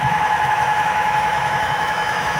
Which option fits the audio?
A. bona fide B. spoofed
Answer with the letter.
B